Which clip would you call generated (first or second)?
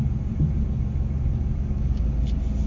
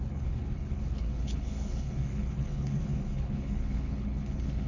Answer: second